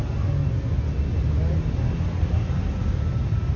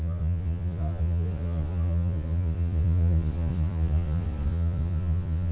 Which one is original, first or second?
first